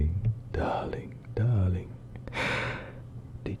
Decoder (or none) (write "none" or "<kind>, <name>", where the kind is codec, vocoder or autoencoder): none